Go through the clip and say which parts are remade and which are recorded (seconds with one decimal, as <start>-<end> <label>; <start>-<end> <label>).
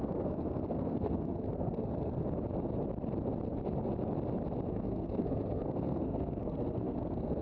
0.0-2.2 remade; 2.2-4.7 recorded; 4.7-7.4 remade